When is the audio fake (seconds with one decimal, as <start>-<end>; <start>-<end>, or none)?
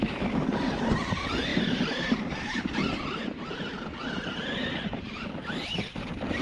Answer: 0.0-6.4